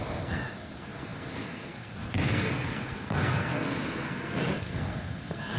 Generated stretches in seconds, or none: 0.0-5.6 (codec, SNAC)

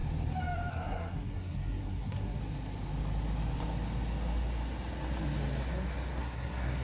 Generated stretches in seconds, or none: 0.7-2.4 (codec, SNAC); 6.2-6.8

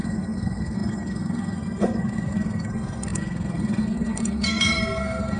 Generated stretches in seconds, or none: 0.0-5.4 (codec, SNAC)

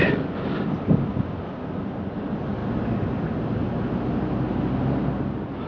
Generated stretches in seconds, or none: none

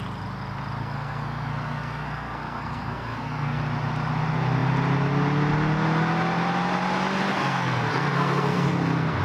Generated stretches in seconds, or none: 0.8-3.6 (codec, SNAC); 7.3-9.2

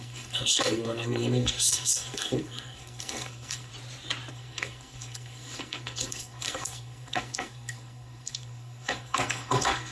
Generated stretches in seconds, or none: 0.0-3.7 (codec, SNAC); 4.3-9.9

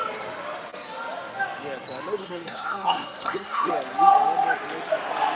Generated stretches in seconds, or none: 2.2-3.7 (codec, SNAC)

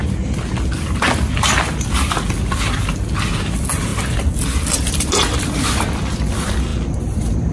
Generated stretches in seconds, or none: none